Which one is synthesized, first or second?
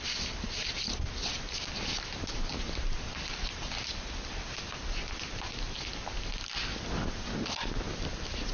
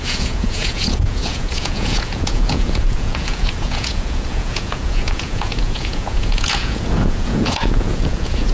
second